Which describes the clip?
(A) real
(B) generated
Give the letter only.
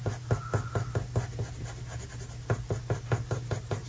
A